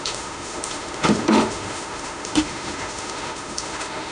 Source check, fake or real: fake